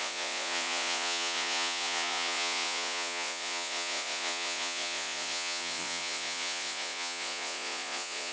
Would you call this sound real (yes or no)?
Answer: no